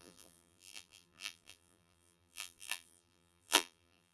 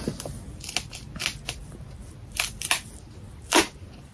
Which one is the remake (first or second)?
first